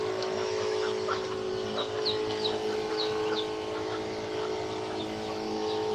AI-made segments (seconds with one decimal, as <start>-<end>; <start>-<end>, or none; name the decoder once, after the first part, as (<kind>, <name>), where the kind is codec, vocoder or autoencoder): 0.0-1.5 (autoencoder, DAC-VAE); 2.9-4.1; 5.0-5.9